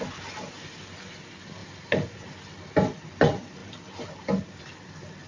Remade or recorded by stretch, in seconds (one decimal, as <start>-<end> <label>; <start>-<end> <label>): 0.0-5.3 recorded